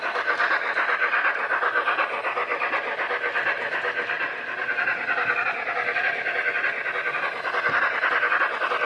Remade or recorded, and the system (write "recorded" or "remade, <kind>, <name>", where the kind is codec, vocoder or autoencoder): recorded